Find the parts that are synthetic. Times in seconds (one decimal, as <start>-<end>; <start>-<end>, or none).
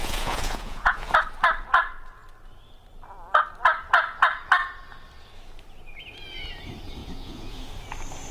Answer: 0.0-1.1; 7.0-7.7